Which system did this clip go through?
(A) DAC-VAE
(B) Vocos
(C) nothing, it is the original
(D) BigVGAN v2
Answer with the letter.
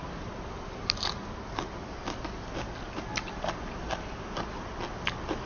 C